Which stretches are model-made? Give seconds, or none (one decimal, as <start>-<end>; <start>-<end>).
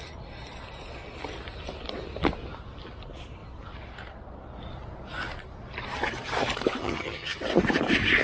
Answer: 6.8-7.4